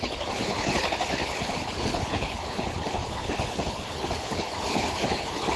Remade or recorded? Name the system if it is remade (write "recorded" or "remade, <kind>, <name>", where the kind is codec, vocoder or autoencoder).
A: remade, codec, HILCodec